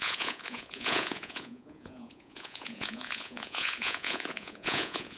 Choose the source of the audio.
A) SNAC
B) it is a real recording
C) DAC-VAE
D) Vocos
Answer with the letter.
D